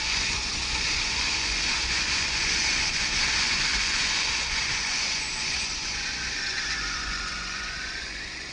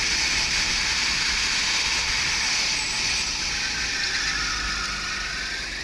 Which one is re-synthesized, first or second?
first